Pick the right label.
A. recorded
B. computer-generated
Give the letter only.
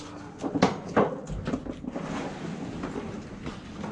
A